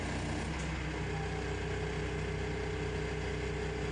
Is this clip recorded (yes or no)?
yes